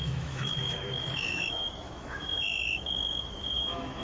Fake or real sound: fake